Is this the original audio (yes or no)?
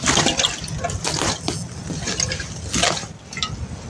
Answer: yes